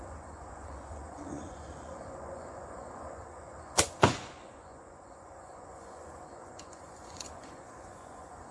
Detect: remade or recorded remade